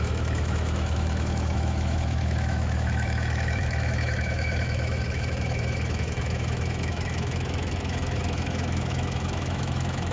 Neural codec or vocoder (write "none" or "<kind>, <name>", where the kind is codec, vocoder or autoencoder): autoencoder, DAC-VAE